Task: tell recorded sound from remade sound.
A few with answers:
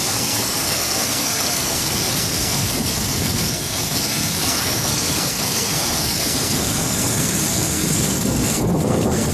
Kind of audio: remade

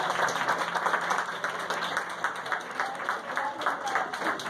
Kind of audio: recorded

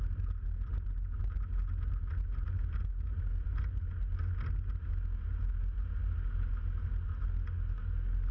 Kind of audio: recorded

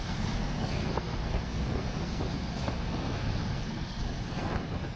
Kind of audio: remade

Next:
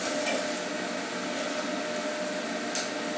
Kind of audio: recorded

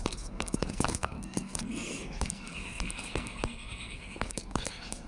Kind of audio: remade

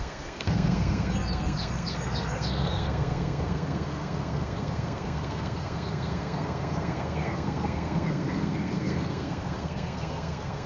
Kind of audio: remade